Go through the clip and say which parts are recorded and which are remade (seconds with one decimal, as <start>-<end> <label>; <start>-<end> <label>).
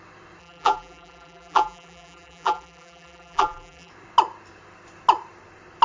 0.0-0.4 recorded; 0.4-3.9 remade; 3.9-5.8 recorded